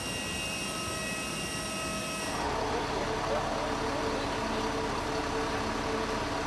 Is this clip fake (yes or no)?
no